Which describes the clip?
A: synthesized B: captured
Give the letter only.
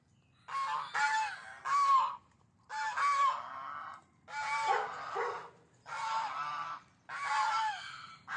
B